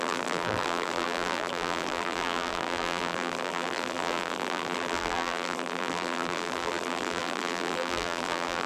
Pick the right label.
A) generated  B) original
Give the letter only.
A